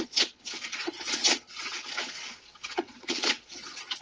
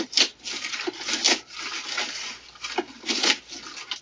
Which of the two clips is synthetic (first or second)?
first